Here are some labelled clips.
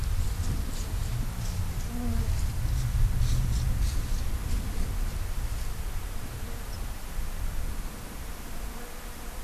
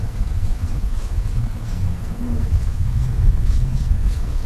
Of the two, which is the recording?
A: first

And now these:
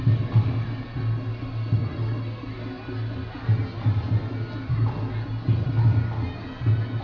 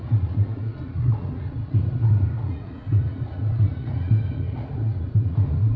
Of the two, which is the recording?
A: first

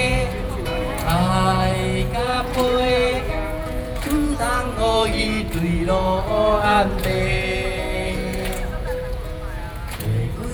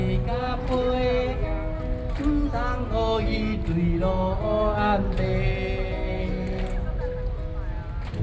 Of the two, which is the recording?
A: second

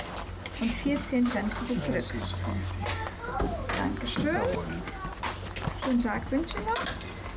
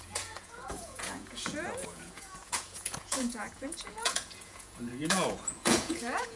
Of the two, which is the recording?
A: first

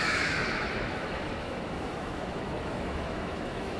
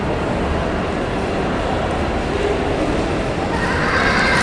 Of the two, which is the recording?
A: second